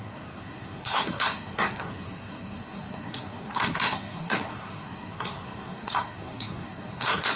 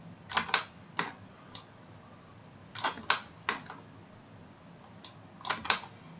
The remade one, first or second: first